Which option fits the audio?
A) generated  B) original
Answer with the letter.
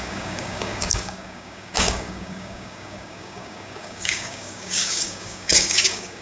A